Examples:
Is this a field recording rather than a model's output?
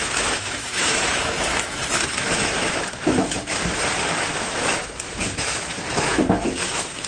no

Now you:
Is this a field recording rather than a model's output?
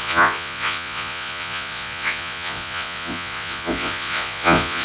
no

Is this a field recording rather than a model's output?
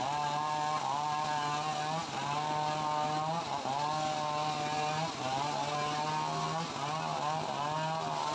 yes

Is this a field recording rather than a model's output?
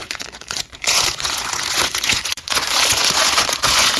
no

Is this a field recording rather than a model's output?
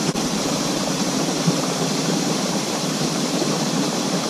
no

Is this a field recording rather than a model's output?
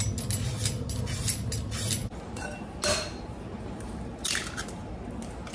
yes